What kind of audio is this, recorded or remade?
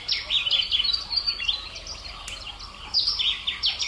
recorded